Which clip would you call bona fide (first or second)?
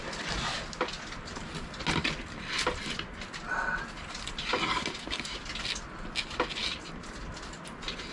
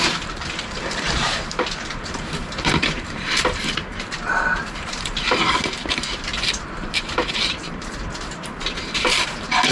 first